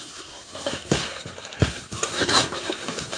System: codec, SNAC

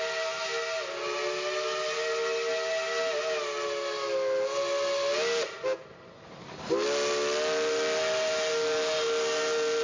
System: none